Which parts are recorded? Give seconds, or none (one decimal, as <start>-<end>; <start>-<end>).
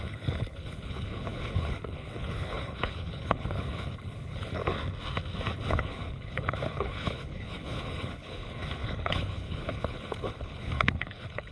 4.6-5.7